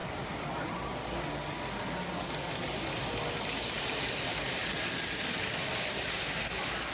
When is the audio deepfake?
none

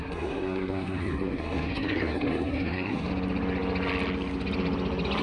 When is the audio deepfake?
0.0-3.1 (codec, SNAC)

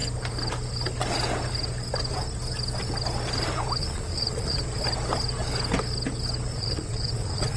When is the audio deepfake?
3.8-4.6 (vocoder, Vocos); 6.5-7.6

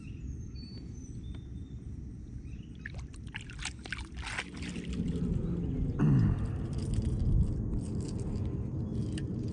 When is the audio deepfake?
none

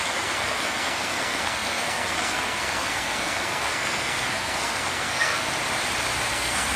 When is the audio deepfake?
0.0-5.5 (codec, SNAC); 6.3-6.8

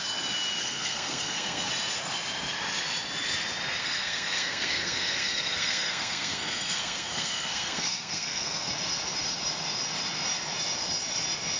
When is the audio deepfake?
0.6-1.7 (codec, SNAC); 3.8-8.7

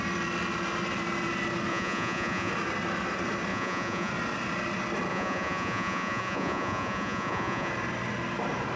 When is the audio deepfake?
1.7-2.5 (vocoder, Vocos); 3.5-4.1; 5.1-7.7